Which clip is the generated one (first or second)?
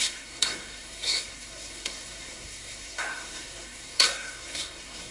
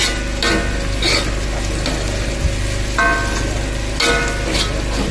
first